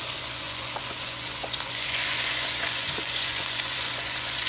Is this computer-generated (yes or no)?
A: yes